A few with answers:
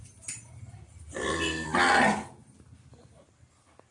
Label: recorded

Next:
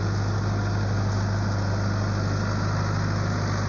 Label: recorded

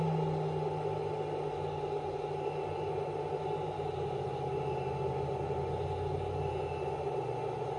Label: recorded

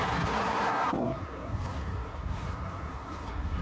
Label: remade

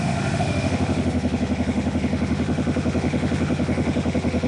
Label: remade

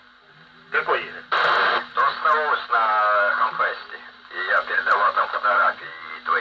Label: recorded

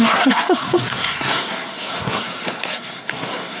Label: remade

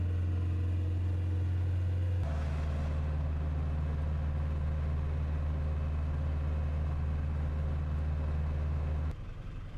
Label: recorded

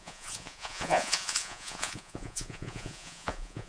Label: remade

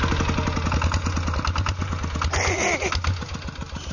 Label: recorded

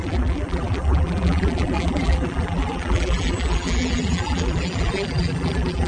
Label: remade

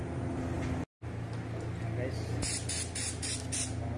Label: recorded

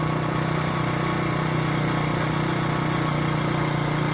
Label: recorded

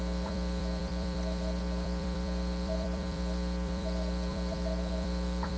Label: remade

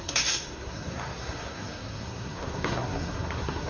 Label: remade